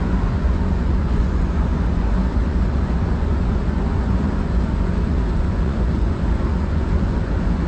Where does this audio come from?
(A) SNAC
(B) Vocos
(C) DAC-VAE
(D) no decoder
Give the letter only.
B